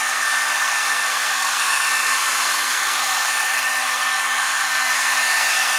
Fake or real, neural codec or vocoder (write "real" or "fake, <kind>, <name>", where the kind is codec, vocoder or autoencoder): fake, codec, SNAC